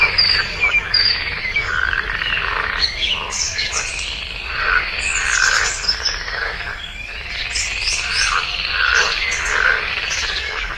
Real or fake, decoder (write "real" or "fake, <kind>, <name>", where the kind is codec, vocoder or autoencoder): fake, codec, DAC